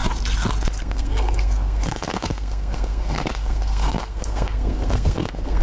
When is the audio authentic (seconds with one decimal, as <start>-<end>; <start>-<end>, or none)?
0.0-0.8